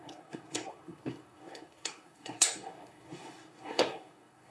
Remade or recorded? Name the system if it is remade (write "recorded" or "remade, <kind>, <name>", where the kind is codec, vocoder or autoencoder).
remade, codec, SNAC